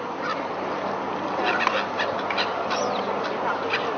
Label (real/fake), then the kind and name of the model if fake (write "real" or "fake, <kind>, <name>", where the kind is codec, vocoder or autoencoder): real